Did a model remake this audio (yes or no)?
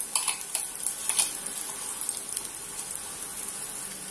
no